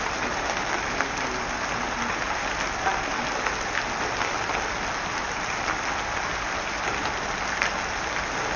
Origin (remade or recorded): recorded